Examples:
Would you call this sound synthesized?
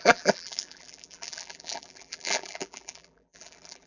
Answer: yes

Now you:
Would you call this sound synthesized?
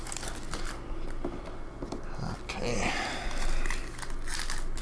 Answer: no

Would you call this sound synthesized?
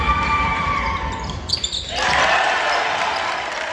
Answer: yes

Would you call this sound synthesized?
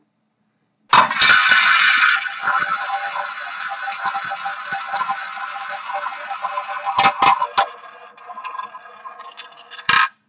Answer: no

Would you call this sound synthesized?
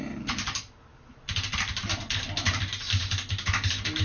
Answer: no